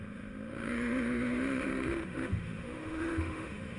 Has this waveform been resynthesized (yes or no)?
yes